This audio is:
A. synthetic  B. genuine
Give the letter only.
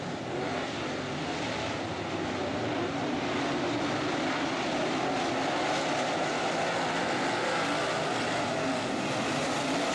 B